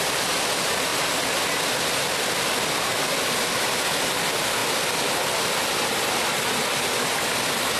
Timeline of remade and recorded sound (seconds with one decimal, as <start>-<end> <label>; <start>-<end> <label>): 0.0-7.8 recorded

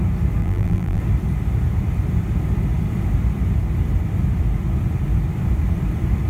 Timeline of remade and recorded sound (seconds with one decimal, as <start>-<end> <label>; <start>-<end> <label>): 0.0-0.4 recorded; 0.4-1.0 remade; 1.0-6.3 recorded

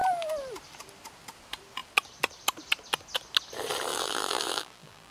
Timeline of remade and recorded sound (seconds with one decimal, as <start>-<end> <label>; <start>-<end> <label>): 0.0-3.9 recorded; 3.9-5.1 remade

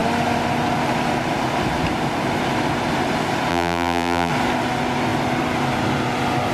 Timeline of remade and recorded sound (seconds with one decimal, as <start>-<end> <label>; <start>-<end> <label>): 0.0-3.5 recorded; 3.5-4.3 remade; 4.3-6.5 recorded

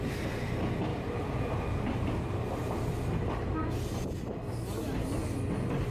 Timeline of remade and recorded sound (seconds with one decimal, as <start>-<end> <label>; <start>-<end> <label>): 0.0-0.9 recorded; 0.9-3.7 remade; 3.7-5.9 recorded

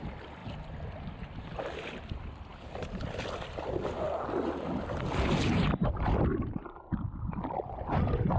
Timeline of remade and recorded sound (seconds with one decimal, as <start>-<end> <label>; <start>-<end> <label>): 0.0-2.5 recorded; 2.5-3.2 remade; 3.2-6.3 recorded; 6.3-7.3 remade; 7.3-8.4 recorded